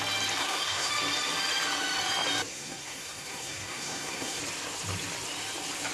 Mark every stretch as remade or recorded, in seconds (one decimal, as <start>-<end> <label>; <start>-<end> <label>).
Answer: 0.0-0.4 recorded; 0.4-0.9 remade; 0.9-2.5 recorded; 2.5-4.4 remade; 4.4-5.9 recorded